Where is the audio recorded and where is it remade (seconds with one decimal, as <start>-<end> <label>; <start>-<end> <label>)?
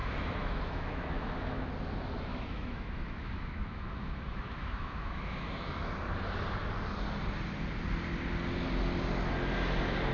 0.0-1.7 remade; 1.7-2.3 recorded; 2.3-5.9 remade; 5.9-10.1 recorded